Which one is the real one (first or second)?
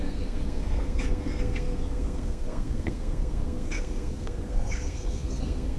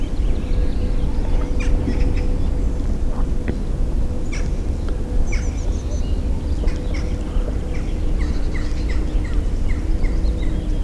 second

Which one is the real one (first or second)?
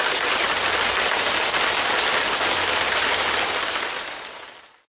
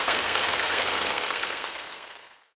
first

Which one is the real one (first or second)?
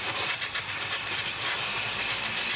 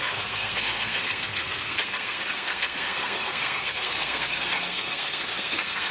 first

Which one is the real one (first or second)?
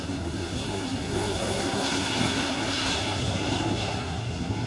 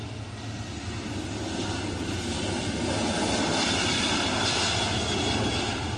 second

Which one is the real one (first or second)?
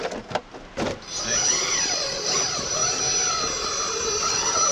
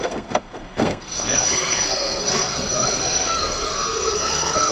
first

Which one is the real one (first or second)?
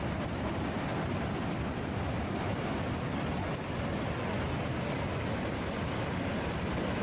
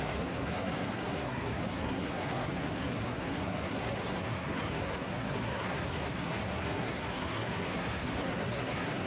first